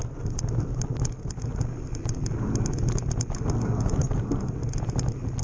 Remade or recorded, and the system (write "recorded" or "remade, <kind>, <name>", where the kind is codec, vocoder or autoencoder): recorded